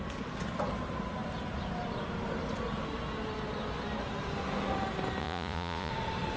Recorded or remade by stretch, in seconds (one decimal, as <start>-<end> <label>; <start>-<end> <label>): 0.0-5.2 recorded; 5.2-5.9 remade; 5.9-6.4 recorded